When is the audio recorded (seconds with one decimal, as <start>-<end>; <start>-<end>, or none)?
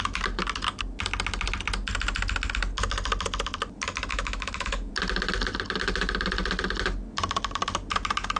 0.0-4.1; 4.9-8.4